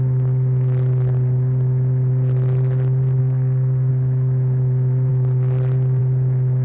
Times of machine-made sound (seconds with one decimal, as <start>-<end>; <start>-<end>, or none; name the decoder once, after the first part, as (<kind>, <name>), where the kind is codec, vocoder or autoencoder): 3.2-3.9 (codec, SNAC)